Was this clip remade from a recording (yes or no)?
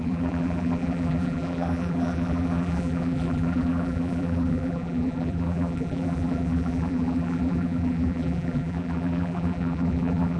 yes